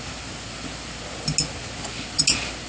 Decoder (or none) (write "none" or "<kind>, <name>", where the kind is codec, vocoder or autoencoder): none